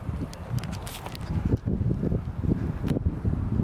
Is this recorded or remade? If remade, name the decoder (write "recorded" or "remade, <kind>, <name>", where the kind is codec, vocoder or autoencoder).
recorded